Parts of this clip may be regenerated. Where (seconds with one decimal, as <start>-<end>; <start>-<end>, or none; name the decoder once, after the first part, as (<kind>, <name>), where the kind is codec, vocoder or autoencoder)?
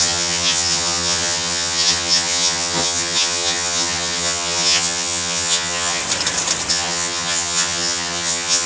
0.0-6.0 (vocoder, HiFi-GAN); 6.7-8.7